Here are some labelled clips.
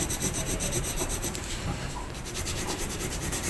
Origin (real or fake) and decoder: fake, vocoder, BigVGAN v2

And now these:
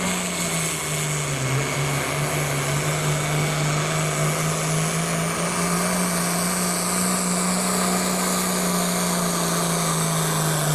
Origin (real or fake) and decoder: real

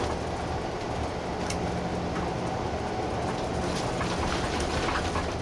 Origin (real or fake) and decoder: real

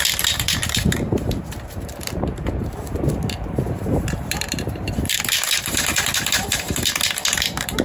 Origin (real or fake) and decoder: fake, vocoder, BigVGAN v2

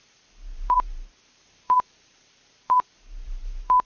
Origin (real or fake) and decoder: fake, vocoder, BigVGAN v2